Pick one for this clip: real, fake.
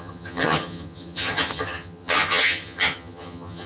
fake